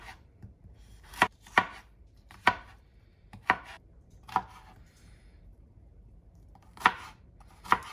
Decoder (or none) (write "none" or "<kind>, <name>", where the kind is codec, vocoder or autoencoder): vocoder, BigVGAN v2